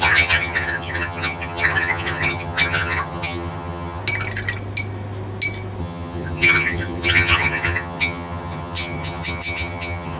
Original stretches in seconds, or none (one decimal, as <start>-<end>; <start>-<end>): 4.0-5.8